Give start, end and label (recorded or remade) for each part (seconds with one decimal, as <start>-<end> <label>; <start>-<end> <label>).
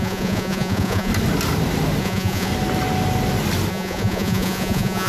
0.0-1.1 remade; 1.1-2.0 recorded; 2.0-2.5 remade; 2.5-3.7 recorded; 3.7-5.1 remade